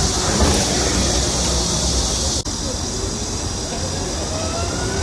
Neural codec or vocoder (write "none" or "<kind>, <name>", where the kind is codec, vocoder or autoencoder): none